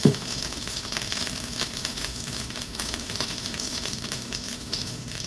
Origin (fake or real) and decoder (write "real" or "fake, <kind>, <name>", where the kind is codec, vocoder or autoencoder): fake, autoencoder, DAC-VAE